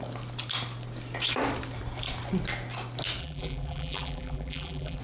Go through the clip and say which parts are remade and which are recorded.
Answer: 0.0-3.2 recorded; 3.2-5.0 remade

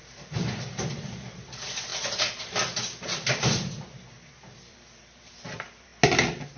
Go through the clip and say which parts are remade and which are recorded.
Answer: 0.0-5.9 remade; 5.9-6.6 recorded